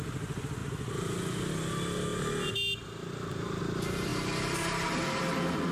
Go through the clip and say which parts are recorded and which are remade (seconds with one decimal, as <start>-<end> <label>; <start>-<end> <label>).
0.0-5.7 recorded